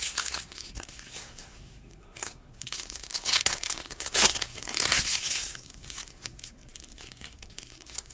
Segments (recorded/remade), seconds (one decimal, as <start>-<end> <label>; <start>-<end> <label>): 0.0-8.1 remade